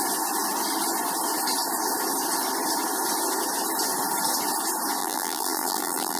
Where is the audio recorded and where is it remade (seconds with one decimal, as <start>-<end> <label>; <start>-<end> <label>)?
0.0-5.0 recorded; 5.0-6.2 remade